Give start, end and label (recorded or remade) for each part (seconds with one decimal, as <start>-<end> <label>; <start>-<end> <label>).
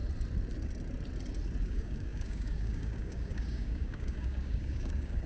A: 0.0-1.6 recorded; 1.6-5.3 remade